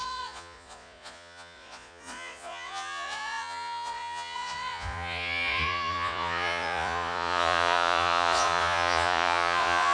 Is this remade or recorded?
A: remade